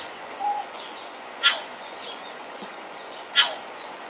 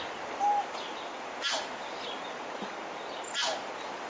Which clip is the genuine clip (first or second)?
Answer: second